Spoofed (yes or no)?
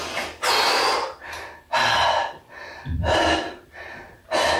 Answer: no